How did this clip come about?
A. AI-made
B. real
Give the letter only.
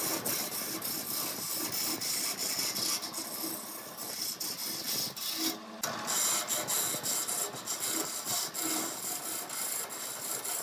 B